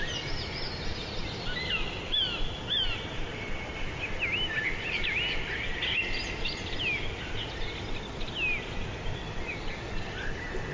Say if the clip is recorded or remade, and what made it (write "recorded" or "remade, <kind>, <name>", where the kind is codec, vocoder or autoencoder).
recorded